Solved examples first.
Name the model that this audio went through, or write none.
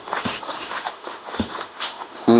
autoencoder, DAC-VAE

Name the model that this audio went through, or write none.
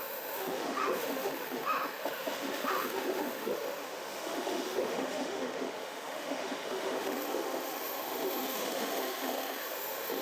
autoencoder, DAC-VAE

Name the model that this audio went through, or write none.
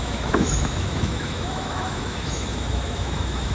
autoencoder, DAC-VAE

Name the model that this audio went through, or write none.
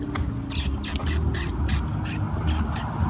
none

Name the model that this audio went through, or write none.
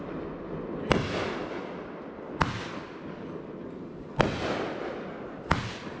none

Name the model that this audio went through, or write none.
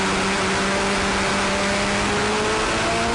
none